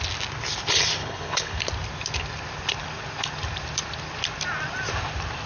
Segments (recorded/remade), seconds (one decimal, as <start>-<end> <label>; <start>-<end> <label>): 0.0-1.0 recorded; 1.0-1.6 remade; 1.6-5.5 recorded